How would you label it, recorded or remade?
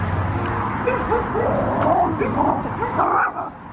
recorded